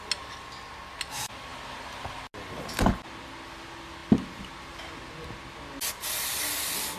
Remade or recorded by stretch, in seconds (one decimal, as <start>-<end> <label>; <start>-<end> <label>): 0.0-7.0 recorded